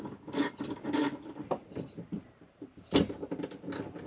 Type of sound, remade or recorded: recorded